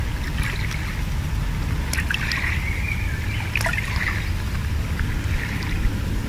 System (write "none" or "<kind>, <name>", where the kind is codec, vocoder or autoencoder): none